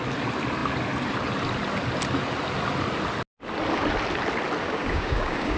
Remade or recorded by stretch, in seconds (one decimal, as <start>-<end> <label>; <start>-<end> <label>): 0.0-4.6 recorded; 4.6-5.6 remade